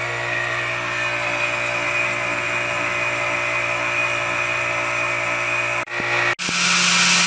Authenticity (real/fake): real